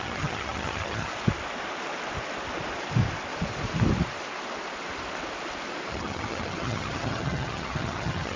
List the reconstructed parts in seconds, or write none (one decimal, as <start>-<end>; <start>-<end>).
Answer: 0.0-1.1; 5.9-8.4